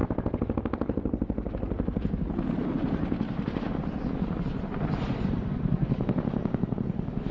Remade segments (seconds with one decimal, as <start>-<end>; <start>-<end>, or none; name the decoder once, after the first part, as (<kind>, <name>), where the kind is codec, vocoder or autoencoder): none